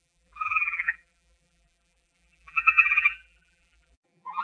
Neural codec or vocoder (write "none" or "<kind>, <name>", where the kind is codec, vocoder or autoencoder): vocoder, BigVGAN v2